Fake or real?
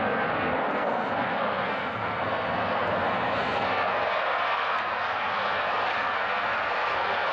fake